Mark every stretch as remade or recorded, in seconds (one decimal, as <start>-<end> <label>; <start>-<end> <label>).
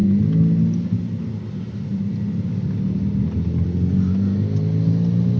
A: 0.0-5.4 recorded